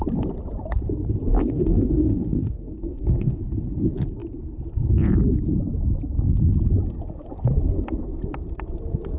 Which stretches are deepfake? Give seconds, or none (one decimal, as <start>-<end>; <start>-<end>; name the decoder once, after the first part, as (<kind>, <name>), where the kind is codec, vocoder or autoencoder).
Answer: 1.4-3.4 (codec, DAC)